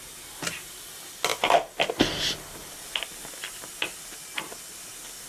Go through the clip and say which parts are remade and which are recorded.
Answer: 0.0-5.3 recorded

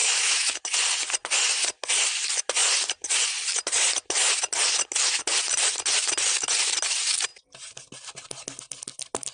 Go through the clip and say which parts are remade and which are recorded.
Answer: 0.0-0.6 remade; 0.6-9.3 recorded

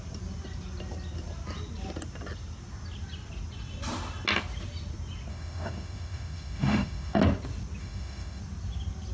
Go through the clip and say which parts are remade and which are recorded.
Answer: 0.0-5.3 recorded; 5.3-7.2 remade; 7.2-7.8 recorded; 7.8-8.4 remade; 8.4-9.1 recorded

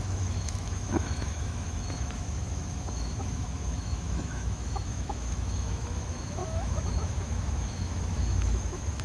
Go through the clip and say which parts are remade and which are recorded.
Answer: 0.0-9.0 remade

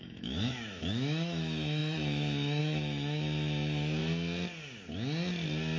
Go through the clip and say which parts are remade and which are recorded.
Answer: 0.0-4.0 remade; 4.0-5.8 recorded